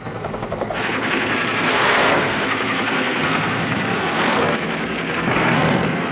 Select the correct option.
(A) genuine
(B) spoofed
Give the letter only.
B